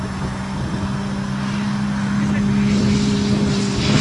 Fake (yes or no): yes